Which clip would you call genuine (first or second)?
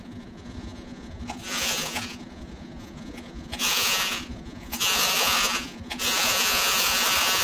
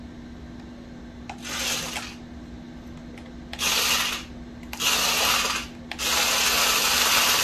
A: second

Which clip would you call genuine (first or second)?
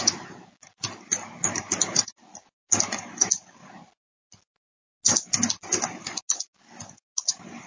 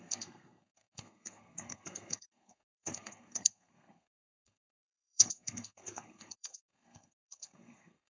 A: first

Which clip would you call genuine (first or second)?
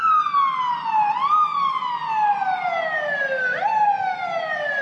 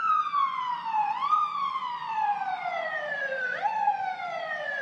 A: first